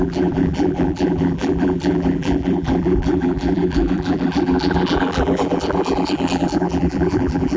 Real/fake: fake